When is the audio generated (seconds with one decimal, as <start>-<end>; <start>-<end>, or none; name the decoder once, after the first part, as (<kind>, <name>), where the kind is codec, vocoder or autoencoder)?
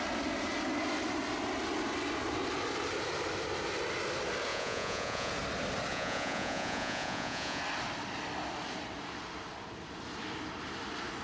4.5-5.3 (vocoder, Vocos); 5.9-7.6